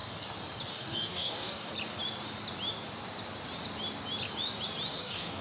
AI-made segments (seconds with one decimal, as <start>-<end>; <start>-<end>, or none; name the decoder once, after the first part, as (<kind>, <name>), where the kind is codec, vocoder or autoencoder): 0.7-1.7 (codec, DAC); 4.9-5.4